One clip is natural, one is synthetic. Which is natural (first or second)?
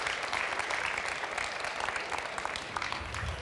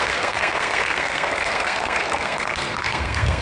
first